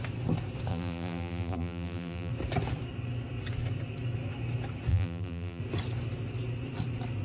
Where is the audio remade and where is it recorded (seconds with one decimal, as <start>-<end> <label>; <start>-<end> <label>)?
0.0-0.7 recorded; 0.7-2.3 remade; 2.3-4.9 recorded; 4.9-5.6 remade; 5.6-7.2 recorded

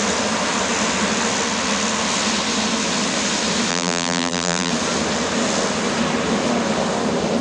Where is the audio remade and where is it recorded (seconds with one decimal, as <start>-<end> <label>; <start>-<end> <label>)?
0.0-3.7 recorded; 3.7-4.7 remade; 4.7-7.4 recorded

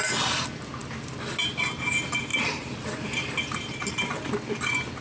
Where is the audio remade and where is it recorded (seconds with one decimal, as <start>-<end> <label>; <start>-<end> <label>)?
0.0-2.3 recorded; 2.3-4.2 remade; 4.2-5.0 recorded

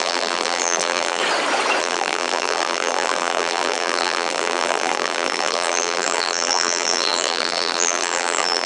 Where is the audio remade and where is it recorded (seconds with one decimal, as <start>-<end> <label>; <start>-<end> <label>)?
0.0-1.2 remade; 1.2-1.8 recorded; 1.8-8.7 remade

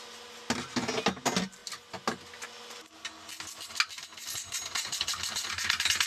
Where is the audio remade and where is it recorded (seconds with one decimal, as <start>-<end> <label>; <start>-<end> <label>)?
0.0-6.1 recorded

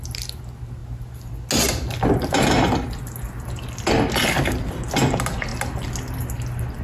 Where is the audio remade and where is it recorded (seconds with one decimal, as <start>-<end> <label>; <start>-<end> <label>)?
0.0-6.8 recorded

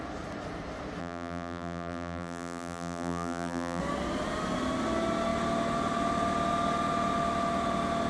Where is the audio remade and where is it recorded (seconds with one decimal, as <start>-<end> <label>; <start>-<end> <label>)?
0.0-1.0 recorded; 1.0-3.8 remade; 3.8-8.1 recorded